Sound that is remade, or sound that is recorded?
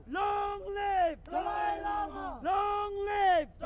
recorded